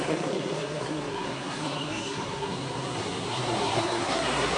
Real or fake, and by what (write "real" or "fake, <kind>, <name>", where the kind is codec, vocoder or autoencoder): fake, codec, SNAC